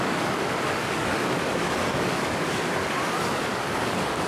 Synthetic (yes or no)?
yes